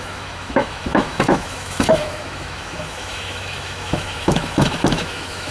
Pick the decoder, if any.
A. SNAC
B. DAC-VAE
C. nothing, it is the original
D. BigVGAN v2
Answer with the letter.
B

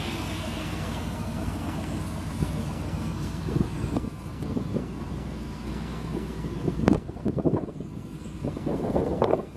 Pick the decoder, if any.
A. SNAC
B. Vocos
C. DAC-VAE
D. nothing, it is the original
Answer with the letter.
A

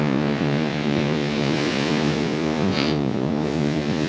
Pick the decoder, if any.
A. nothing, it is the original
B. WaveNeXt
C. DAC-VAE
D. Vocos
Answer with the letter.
D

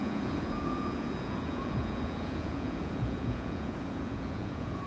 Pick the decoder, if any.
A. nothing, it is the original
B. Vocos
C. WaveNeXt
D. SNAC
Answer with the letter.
B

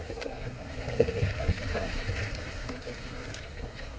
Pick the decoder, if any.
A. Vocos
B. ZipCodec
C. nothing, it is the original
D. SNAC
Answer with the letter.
D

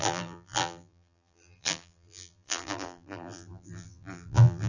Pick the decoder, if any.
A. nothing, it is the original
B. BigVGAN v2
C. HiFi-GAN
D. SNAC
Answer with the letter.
B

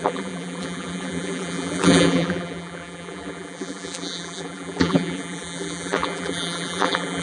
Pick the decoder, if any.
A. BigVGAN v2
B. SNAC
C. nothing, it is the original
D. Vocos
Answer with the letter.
A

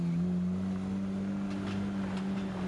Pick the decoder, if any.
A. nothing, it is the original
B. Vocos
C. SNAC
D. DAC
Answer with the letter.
A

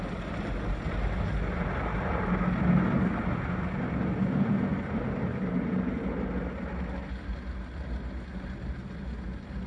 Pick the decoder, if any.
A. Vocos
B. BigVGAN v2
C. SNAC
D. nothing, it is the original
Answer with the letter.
D